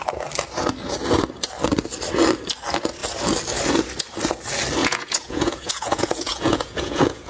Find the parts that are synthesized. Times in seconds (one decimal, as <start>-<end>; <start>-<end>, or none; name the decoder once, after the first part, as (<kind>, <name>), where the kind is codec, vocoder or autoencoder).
4.8-7.3 (vocoder, Vocos)